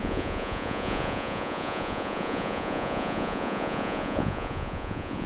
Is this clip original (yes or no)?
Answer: no